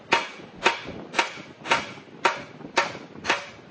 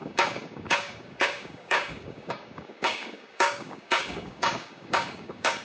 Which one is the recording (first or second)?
first